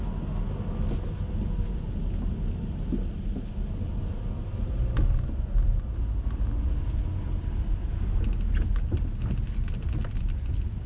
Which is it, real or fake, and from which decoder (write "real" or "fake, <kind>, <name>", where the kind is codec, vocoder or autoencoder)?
real